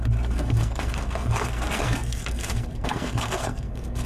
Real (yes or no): no